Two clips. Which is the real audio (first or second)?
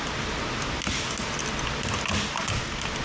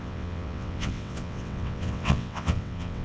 first